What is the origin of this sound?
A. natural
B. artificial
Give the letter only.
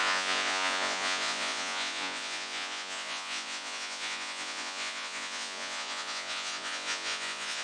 B